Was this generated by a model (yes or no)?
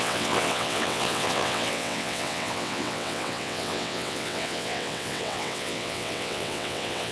yes